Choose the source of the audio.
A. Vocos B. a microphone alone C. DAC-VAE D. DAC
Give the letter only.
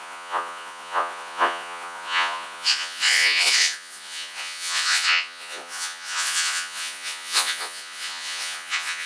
A